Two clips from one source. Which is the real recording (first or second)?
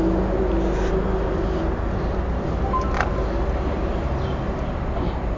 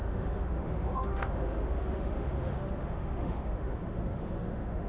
first